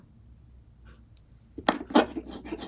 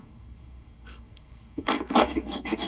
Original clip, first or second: first